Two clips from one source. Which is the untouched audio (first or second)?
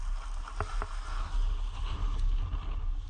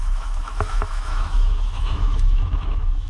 first